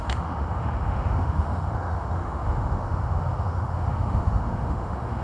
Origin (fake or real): fake